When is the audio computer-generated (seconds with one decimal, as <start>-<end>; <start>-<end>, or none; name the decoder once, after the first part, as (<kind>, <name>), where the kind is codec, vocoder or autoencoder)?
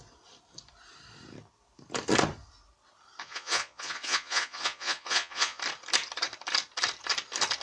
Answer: 3.2-5.6 (vocoder, Vocos)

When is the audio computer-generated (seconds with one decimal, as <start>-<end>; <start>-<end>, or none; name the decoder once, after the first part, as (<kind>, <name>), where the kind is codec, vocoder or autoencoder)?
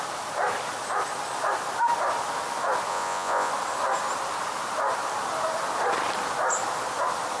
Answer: 2.9-3.5 (vocoder, Vocos)